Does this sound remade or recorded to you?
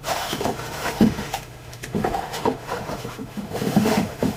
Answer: remade